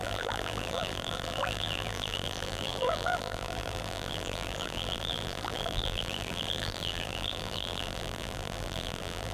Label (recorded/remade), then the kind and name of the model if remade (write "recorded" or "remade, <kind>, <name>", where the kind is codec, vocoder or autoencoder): remade, vocoder, BigVGAN v2